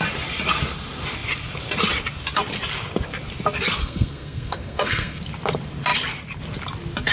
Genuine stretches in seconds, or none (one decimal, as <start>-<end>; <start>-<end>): 0.0-3.8; 5.2-7.1